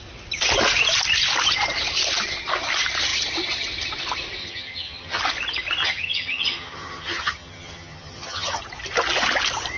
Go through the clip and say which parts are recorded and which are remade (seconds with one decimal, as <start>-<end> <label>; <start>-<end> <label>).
0.0-4.4 recorded; 4.4-5.2 remade; 5.2-5.8 recorded; 5.8-8.6 remade; 8.6-9.8 recorded